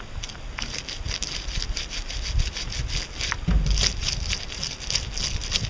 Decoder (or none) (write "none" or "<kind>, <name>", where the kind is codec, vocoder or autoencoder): none